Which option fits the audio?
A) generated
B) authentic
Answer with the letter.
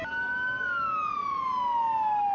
B